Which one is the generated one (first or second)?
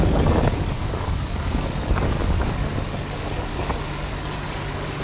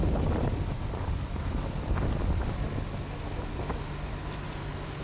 first